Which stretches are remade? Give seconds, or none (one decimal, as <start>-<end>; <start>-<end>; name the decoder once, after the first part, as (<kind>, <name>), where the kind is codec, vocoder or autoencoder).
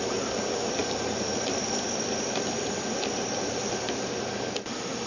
0.8-3.9 (vocoder, BigVGAN v2)